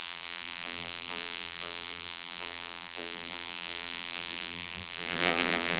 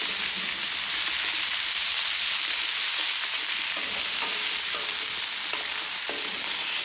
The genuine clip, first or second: second